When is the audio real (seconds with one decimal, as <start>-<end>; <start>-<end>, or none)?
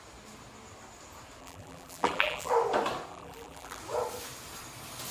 0.0-1.4; 2.5-3.1; 3.8-5.1